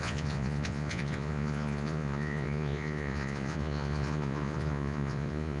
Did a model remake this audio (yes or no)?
yes